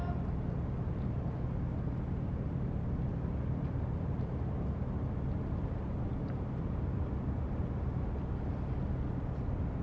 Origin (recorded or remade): recorded